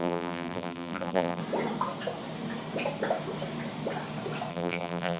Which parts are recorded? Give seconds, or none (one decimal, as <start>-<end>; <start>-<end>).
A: 1.4-4.5